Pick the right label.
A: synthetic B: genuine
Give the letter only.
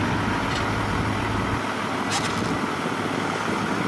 B